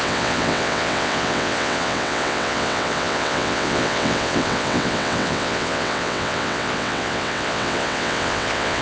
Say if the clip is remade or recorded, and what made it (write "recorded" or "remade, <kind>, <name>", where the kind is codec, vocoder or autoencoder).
remade, vocoder, WaveNeXt